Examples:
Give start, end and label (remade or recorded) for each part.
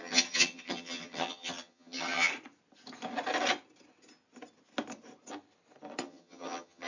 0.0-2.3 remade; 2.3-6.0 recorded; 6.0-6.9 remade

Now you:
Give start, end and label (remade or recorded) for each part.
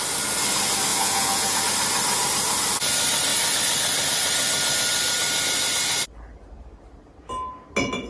0.0-0.9 recorded; 0.9-1.6 remade; 1.6-8.1 recorded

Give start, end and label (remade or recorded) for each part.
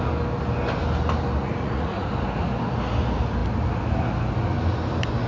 0.0-1.4 recorded; 1.4-2.1 remade; 2.1-5.3 recorded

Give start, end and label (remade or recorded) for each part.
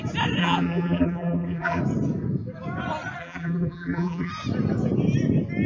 0.0-0.4 recorded; 0.4-1.8 remade; 1.8-3.2 recorded; 3.2-4.3 remade; 4.3-5.7 recorded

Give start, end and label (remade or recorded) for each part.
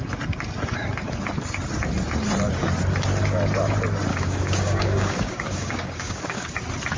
0.0-4.1 recorded; 4.1-6.5 remade; 6.5-7.0 recorded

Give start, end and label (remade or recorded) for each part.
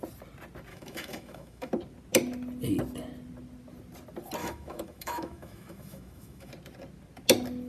0.0-0.7 recorded; 0.7-1.7 remade; 1.7-4.4 recorded; 4.4-6.5 remade; 6.5-7.7 recorded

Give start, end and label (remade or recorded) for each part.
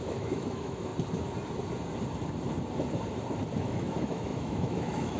0.0-0.9 remade; 0.9-3.6 recorded; 3.6-5.2 remade